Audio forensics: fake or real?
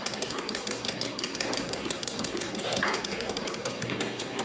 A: fake